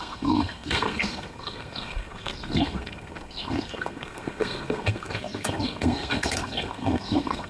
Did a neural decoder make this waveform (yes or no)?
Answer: yes